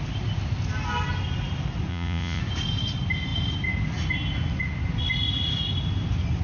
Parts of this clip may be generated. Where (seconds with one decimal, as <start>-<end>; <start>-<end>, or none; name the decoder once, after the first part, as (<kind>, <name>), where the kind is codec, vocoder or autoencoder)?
1.9-2.4 (vocoder, Vocos)